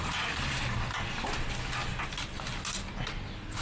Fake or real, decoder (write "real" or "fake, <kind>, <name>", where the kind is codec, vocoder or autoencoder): real